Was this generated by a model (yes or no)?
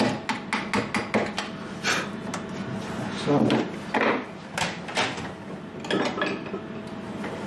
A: no